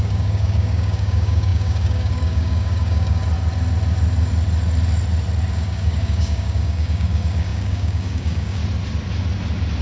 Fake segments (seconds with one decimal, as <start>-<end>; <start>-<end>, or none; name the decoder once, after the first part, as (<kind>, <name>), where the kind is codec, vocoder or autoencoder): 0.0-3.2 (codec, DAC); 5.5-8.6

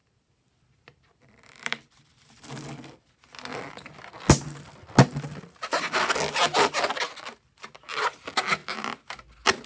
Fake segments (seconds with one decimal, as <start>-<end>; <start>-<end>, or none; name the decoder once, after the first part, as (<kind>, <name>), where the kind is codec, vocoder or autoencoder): 0.0-3.0 (vocoder, BigVGAN v2); 3.5-4.0

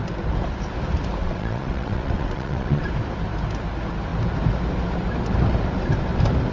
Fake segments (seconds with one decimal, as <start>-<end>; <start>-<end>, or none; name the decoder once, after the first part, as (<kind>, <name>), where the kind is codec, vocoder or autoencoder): 1.2-2.8 (vocoder, WaveNeXt)

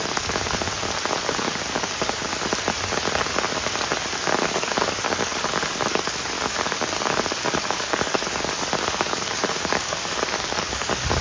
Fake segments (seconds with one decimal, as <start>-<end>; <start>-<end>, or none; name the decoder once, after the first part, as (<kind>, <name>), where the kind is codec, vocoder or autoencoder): 0.0-0.7 (codec, DAC); 1.3-2.3; 4.2-11.2

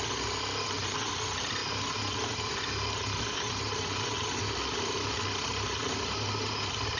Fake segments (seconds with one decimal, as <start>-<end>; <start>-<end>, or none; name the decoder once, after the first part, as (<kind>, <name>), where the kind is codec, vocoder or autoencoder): none